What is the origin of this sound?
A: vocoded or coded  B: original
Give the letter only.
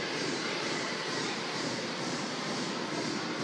A